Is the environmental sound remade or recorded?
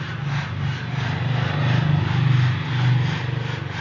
recorded